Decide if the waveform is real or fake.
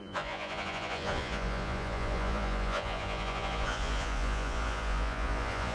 fake